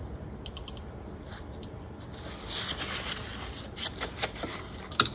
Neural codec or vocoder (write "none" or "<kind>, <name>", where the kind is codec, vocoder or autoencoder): none